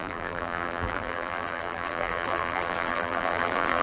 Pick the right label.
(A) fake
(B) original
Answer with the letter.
A